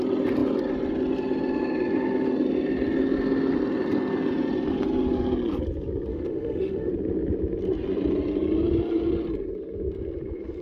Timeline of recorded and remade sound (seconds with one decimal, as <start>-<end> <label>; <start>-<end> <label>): 0.0-6.1 recorded; 6.1-6.9 remade; 6.9-10.6 recorded